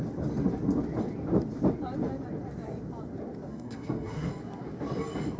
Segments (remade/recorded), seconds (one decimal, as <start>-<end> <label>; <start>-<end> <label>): 0.0-3.5 recorded; 3.5-4.3 remade; 4.3-5.4 recorded